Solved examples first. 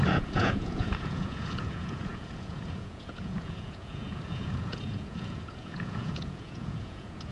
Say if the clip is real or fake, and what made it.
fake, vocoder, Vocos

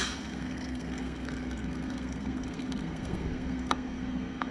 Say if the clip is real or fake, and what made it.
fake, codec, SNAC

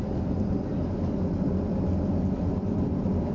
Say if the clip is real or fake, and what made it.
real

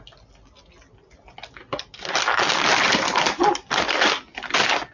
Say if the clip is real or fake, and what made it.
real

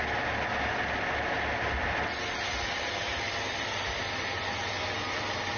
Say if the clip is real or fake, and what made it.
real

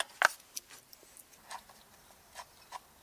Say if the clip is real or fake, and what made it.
real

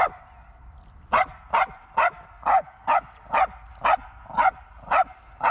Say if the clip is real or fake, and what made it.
real